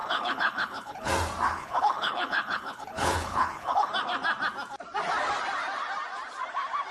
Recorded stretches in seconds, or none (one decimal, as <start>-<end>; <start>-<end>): 1.1-1.5; 3.9-6.9